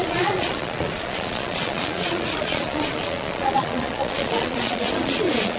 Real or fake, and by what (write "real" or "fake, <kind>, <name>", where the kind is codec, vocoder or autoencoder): fake, vocoder, Vocos